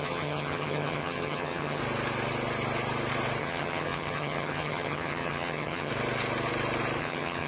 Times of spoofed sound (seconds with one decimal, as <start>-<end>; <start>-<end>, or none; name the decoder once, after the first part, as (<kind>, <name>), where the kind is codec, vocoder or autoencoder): 0.0-1.8 (vocoder, HiFi-GAN); 3.4-5.9; 7.0-7.5